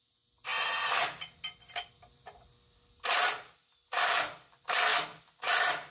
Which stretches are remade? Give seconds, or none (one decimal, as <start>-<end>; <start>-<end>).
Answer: none